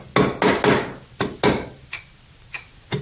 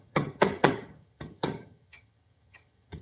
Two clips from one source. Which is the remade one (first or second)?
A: second